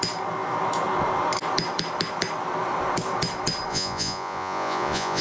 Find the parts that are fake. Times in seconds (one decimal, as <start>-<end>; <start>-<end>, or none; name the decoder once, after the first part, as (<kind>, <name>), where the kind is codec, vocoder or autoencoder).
3.7-5.2 (vocoder, Vocos)